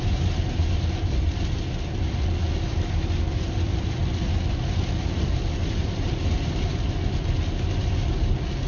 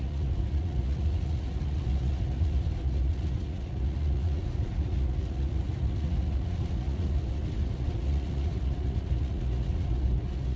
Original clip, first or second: first